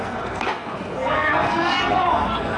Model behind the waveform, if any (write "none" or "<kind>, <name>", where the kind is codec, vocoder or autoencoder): codec, SNAC